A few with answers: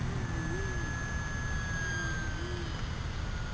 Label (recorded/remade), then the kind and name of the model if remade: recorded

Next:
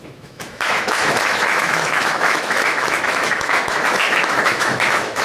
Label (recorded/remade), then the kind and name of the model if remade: remade, autoencoder, DAC-VAE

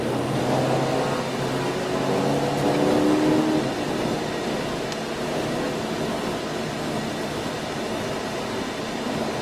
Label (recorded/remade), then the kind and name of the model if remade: recorded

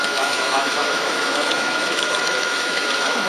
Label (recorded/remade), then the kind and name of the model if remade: remade, autoencoder, DAC-VAE